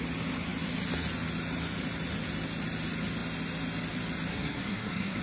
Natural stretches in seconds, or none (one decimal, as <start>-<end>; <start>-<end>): 0.0-4.3